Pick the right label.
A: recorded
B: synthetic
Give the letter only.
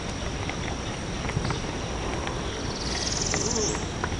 A